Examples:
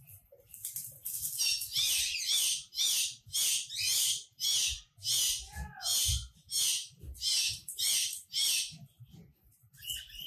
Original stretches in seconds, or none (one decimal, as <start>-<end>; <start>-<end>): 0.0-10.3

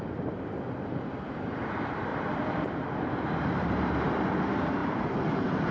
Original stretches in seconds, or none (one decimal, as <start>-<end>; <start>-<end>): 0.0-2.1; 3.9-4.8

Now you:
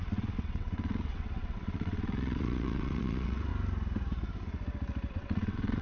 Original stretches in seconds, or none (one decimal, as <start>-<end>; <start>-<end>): 3.5-5.1

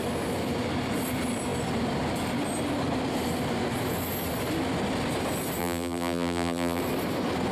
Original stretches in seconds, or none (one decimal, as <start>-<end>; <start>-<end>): 0.0-5.6; 6.8-7.5

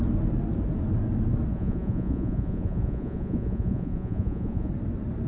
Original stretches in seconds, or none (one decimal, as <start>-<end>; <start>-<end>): 0.0-1.5; 4.7-5.3